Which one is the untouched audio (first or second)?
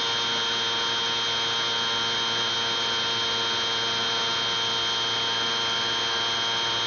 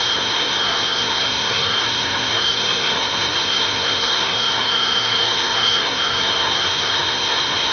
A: first